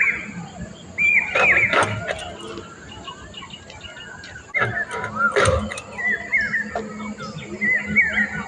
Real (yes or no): yes